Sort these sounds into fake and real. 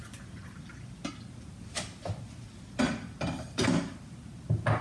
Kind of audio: real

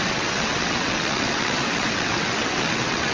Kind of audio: fake